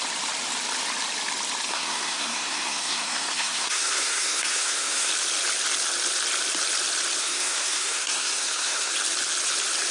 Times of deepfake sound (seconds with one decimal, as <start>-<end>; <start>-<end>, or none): 1.7-5.1; 7.2-8.9

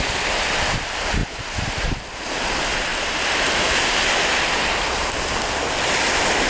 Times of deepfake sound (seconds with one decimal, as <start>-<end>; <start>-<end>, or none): 1.2-2.3